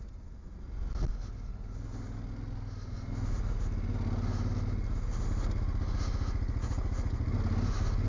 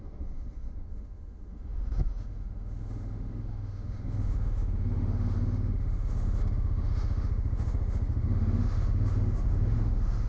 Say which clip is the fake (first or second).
second